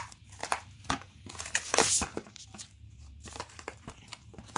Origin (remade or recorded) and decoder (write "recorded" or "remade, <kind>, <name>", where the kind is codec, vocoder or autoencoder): remade, vocoder, BigVGAN v2